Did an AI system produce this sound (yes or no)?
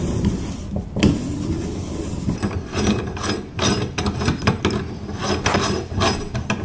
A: no